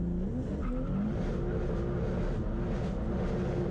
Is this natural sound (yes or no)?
yes